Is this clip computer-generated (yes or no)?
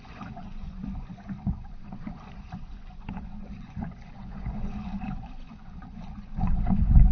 yes